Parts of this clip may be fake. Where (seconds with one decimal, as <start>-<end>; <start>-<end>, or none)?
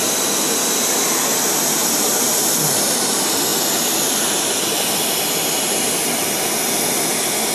none